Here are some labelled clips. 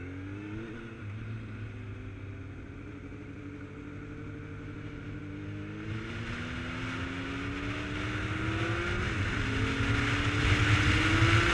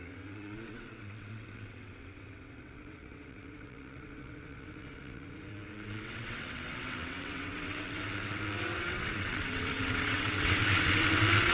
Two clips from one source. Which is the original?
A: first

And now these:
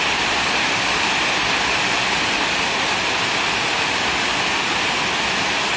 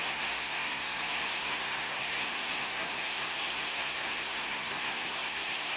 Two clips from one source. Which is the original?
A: first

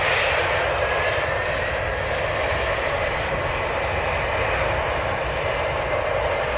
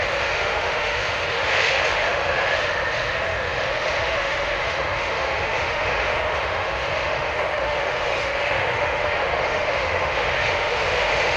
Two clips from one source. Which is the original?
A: first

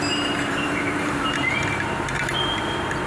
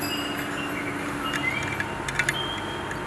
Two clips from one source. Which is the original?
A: second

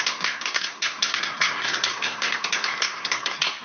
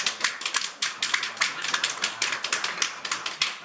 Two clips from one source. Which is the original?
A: second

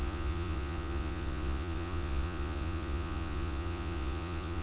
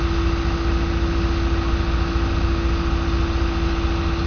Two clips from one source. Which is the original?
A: second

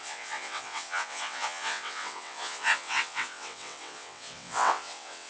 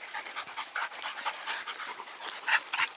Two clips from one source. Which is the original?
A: second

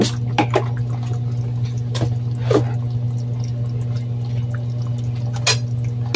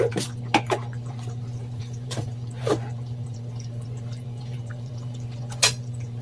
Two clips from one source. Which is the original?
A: first